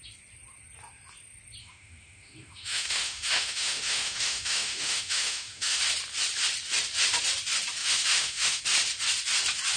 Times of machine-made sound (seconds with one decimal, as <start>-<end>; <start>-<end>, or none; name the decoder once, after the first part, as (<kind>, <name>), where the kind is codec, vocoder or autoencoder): 1.6-5.8 (autoencoder, DAC-VAE); 7.8-8.6